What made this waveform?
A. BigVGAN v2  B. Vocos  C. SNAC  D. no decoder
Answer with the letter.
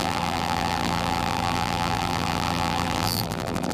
A